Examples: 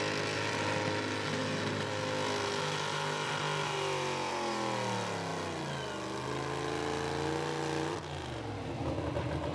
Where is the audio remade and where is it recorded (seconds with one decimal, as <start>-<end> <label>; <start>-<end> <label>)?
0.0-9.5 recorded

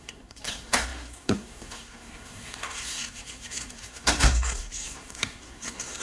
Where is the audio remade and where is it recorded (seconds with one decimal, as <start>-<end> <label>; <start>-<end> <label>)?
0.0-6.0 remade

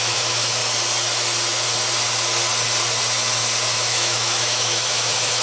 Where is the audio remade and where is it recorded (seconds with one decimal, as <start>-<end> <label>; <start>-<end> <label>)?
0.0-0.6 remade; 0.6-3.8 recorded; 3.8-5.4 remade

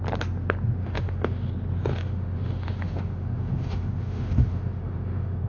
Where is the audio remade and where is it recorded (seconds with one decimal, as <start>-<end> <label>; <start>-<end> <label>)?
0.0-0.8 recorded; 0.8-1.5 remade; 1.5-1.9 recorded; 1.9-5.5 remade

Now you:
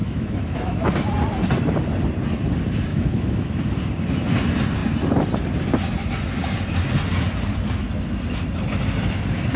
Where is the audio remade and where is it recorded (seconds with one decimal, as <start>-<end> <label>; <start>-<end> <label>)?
0.0-0.9 remade; 0.9-2.9 recorded; 2.9-3.8 remade; 3.8-9.6 recorded